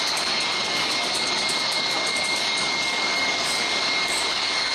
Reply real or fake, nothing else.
fake